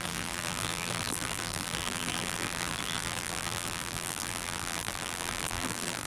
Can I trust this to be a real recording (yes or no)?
no